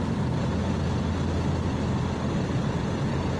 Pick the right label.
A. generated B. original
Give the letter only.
B